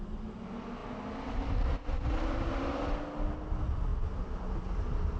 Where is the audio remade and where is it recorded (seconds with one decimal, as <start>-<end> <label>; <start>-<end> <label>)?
0.0-5.2 recorded